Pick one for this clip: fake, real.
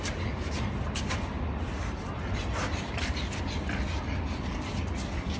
real